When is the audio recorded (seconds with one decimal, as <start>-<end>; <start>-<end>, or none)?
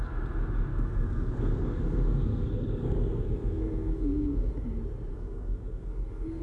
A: 0.0-0.7; 4.5-5.1